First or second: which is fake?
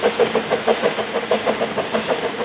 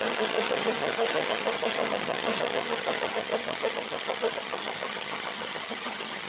second